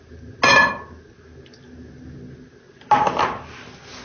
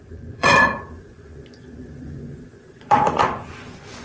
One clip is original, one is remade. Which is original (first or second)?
first